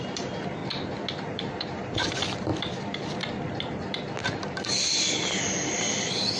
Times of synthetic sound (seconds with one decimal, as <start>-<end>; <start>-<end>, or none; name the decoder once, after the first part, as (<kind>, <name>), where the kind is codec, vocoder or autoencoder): 0.0-0.6 (vocoder, BigVGAN v2); 1.2-2.5; 5.3-6.4